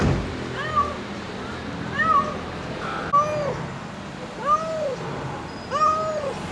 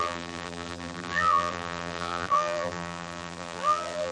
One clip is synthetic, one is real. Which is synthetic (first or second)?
second